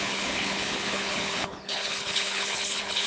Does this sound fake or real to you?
fake